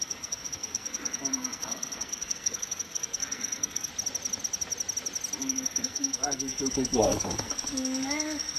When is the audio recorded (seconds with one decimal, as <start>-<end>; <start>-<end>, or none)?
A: 3.9-5.4